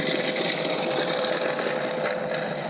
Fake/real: real